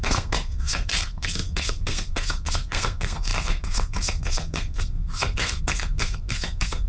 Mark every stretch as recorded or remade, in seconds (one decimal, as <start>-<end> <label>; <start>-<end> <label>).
0.0-6.9 remade